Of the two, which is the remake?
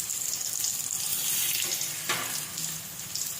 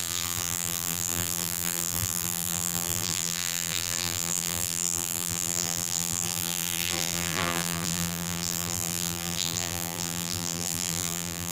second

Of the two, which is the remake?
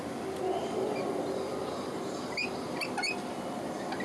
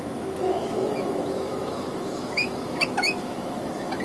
second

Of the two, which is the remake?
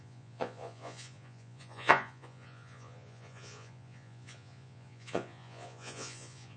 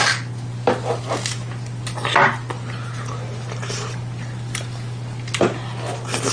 first